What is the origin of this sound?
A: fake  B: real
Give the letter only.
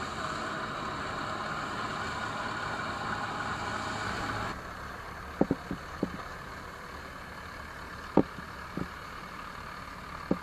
B